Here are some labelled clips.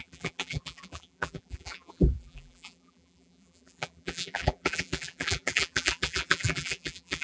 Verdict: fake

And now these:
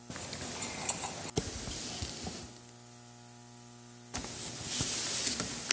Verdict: real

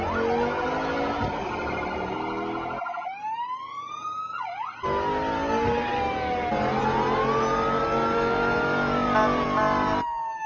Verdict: real